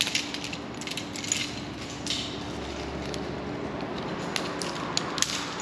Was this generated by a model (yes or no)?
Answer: no